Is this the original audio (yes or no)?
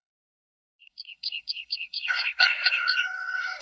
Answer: no